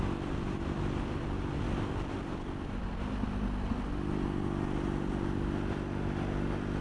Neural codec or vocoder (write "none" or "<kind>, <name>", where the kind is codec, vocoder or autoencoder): none